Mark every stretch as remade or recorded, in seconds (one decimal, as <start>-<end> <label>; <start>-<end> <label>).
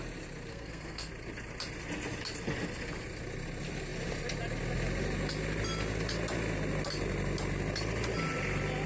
0.0-0.5 recorded; 0.5-1.1 remade; 1.1-8.9 recorded